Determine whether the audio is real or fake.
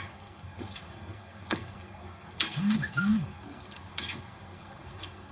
fake